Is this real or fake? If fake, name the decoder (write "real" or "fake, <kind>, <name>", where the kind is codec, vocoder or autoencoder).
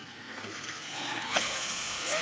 fake, codec, SNAC